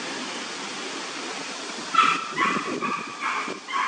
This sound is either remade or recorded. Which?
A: recorded